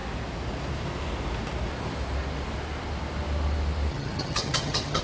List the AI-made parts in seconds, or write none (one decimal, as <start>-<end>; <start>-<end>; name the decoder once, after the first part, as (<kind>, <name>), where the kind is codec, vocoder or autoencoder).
3.9-5.0 (vocoder, HiFi-GAN)